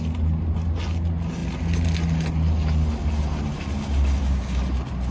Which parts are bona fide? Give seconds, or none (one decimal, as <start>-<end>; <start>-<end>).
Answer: 0.0-5.1